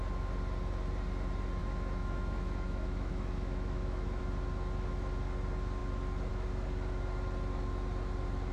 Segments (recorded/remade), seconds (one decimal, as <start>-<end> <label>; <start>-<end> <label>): 0.0-1.6 recorded; 1.6-4.2 remade; 4.2-8.5 recorded